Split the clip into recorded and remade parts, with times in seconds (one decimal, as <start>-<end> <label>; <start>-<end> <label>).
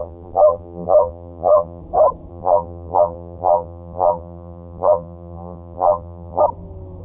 0.0-1.8 remade; 1.8-2.3 recorded; 2.3-6.4 remade; 6.4-7.0 recorded